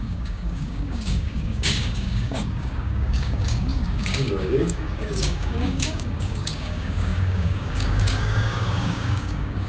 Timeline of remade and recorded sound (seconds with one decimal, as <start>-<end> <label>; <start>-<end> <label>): 0.0-9.7 remade